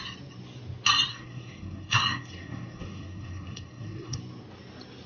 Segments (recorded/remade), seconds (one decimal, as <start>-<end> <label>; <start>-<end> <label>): 0.0-1.1 recorded; 1.1-4.2 remade; 4.2-5.1 recorded